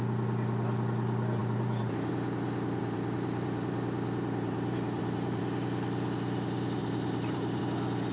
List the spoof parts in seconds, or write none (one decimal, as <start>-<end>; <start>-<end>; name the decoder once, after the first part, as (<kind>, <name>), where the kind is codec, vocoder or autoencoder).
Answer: 1.4-2.1 (vocoder, BigVGAN v2); 2.8-5.4; 6.8-7.6